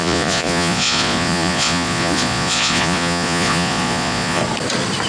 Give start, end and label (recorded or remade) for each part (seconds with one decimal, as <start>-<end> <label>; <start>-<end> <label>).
0.0-4.4 remade; 4.4-5.1 recorded